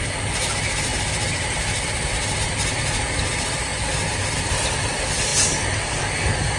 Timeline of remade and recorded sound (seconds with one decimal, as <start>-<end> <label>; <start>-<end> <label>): 0.0-6.6 recorded